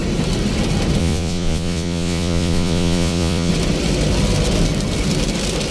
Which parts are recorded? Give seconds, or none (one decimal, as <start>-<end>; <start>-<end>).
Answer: 0.0-1.0; 3.5-5.7